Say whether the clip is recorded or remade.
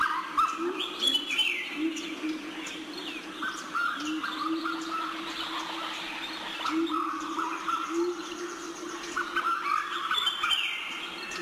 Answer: recorded